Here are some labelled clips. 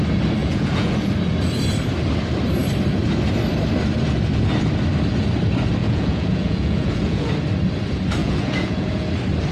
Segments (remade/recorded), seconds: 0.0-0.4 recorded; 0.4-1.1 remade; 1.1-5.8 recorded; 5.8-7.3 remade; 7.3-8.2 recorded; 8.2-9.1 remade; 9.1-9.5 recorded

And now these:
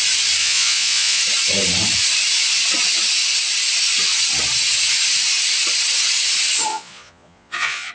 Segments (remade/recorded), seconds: 0.0-0.4 recorded; 0.4-1.2 remade; 1.2-6.7 recorded; 6.7-7.9 remade